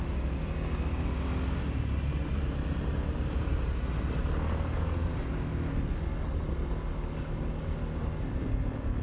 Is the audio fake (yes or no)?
no